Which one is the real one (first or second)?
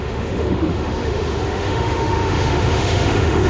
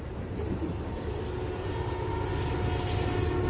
second